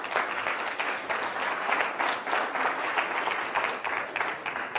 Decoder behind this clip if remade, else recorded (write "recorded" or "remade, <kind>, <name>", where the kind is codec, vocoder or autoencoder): recorded